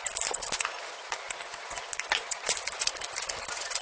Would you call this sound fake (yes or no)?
no